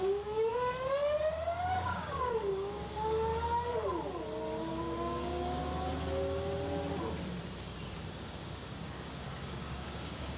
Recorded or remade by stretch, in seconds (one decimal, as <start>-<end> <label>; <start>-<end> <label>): 0.0-0.5 remade; 0.5-1.7 recorded; 1.7-3.3 remade; 3.3-4.7 recorded; 4.7-5.6 remade; 5.6-8.1 recorded; 8.1-10.4 remade